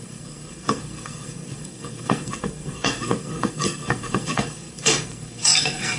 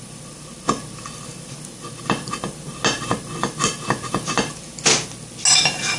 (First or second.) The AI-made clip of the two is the first